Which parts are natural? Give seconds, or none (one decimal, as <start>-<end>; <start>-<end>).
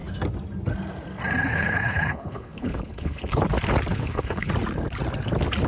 0.0-1.4; 3.4-3.9; 4.5-5.7